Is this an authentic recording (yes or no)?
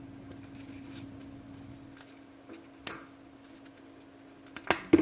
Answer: yes